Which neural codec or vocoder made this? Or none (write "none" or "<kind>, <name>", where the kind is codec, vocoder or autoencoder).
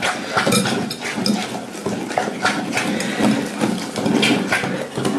none